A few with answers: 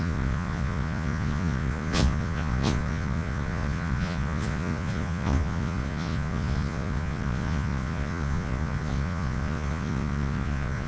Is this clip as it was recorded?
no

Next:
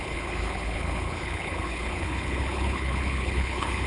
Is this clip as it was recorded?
no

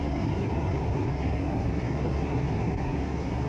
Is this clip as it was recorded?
no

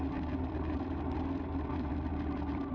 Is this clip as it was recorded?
no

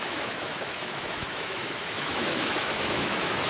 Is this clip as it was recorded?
no